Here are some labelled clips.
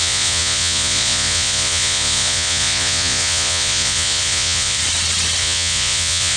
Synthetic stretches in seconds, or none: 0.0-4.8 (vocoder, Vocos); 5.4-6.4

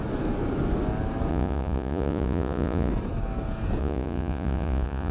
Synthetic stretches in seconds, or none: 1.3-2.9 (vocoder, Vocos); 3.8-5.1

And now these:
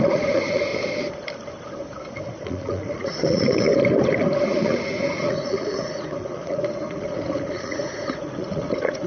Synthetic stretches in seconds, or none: 0.0-0.7 (vocoder, Vocos); 2.3-3.7; 4.4-9.1

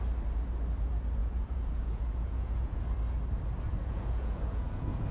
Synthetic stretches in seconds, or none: 1.2-2.8 (vocoder, Vocos); 3.7-5.1

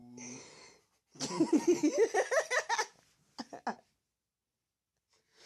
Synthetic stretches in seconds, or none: none